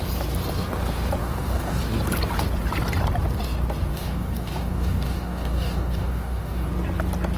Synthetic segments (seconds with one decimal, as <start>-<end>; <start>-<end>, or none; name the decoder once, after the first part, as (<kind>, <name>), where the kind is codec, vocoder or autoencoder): 1.2-1.8 (codec, DAC); 3.9-6.7